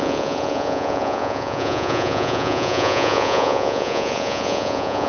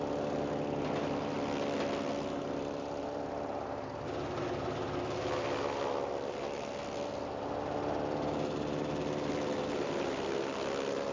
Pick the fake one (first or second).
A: first